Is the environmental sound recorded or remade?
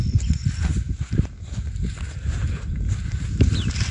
recorded